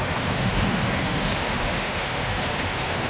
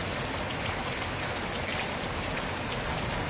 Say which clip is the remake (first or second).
first